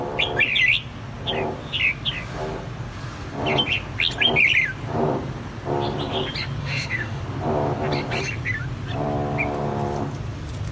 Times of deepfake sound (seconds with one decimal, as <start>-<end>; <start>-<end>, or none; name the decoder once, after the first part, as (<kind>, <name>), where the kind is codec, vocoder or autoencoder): 6.6-7.2 (autoencoder, DAC-VAE)